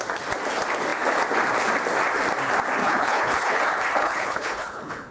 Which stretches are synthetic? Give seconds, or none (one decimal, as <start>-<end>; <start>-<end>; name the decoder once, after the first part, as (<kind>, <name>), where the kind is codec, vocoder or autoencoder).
2.8-3.6 (codec, HILCodec); 4.0-5.1